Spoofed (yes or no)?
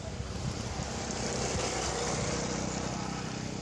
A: no